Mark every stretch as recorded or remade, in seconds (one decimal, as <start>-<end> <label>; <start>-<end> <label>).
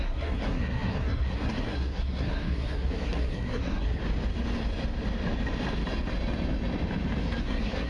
0.0-4.0 remade; 4.0-7.4 recorded; 7.4-7.9 remade